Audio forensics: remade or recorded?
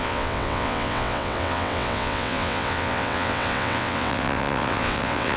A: remade